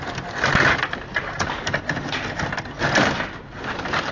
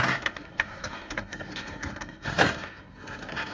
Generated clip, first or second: second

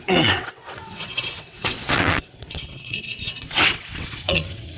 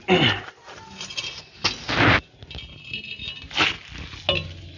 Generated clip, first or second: first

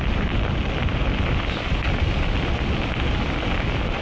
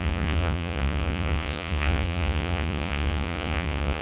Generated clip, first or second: second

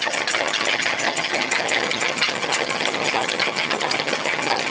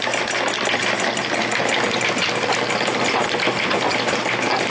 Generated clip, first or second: first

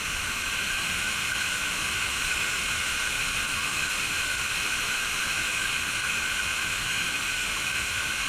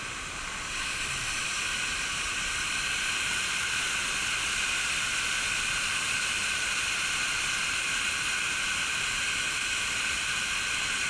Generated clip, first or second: first